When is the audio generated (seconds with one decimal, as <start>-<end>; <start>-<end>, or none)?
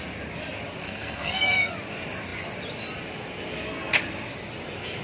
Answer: 0.8-1.7